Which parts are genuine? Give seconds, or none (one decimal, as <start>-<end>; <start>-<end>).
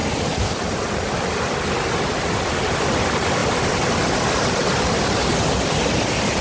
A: 0.0-3.4; 4.1-6.4